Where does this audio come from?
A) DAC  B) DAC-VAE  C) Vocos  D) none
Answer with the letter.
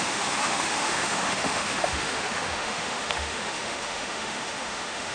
B